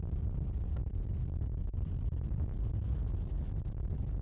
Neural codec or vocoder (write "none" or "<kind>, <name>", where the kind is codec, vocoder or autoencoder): none